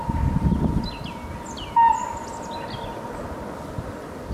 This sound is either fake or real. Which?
real